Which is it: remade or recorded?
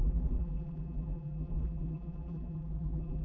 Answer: remade